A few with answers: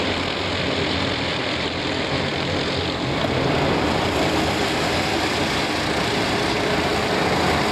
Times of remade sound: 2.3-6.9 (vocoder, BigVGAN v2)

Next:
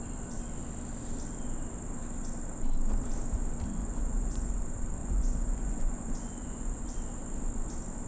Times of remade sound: 3.8-4.5 (vocoder, Vocos); 5.0-6.8

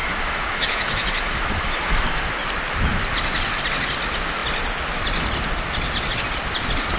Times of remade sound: 0.0-2.2 (autoencoder, DAC-VAE)